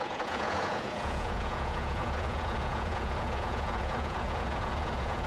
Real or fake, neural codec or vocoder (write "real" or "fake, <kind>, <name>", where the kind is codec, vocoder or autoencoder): fake, vocoder, Vocos